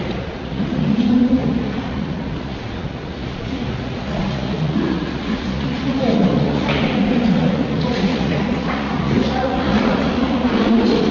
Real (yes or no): no